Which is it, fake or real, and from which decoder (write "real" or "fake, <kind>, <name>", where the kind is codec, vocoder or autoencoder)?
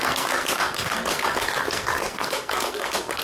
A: fake, codec, SNAC